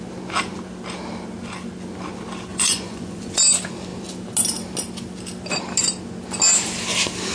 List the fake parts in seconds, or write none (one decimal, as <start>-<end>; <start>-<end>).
2.5-3.4